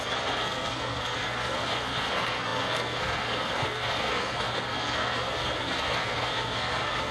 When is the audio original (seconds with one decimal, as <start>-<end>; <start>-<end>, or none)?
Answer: none